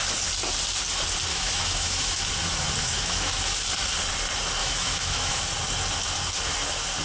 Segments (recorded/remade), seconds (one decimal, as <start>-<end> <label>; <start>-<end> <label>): 0.0-1.3 recorded; 1.3-2.2 remade; 2.2-2.8 recorded; 2.8-3.6 remade; 3.6-4.6 recorded; 4.6-5.4 remade; 5.4-7.0 recorded